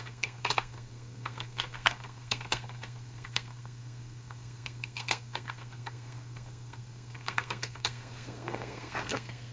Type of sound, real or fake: fake